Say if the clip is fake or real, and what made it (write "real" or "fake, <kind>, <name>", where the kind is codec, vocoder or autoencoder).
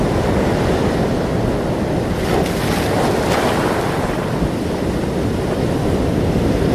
real